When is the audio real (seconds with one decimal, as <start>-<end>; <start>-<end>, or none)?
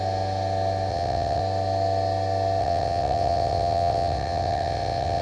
0.0-0.9; 1.4-2.6